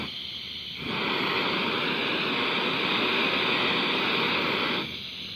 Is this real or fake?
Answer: real